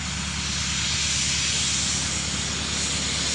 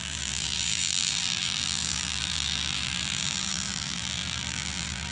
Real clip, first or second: first